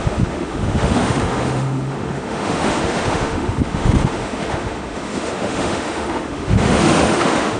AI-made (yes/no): yes